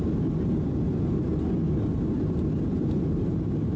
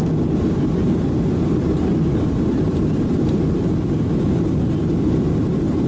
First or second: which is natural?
first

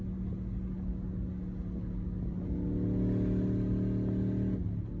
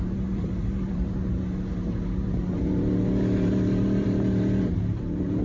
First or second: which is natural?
first